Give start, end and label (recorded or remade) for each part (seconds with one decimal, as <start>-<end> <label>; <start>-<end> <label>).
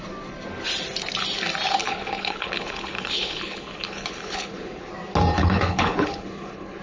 0.0-1.8 recorded; 1.8-4.9 remade; 4.9-5.4 recorded; 5.4-6.8 remade